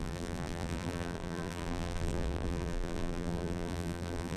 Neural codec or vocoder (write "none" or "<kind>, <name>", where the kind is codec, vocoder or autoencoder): vocoder, BigVGAN v2